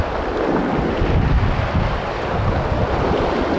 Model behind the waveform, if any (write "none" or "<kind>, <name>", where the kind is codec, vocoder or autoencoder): none